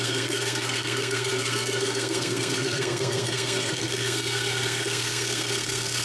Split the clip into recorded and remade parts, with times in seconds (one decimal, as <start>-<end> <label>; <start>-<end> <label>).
0.0-6.0 remade